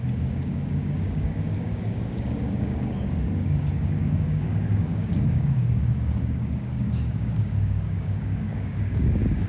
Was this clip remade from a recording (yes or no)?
yes